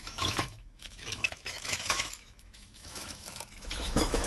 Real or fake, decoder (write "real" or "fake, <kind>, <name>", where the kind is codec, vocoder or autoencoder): fake, autoencoder, DAC-VAE